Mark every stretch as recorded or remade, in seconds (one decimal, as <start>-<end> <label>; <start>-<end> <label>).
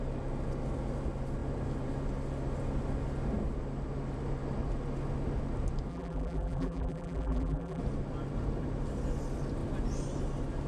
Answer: 0.0-5.9 recorded; 5.9-7.8 remade; 7.8-10.7 recorded